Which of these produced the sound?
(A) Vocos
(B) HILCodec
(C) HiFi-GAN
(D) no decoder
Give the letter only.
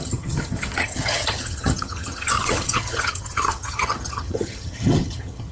C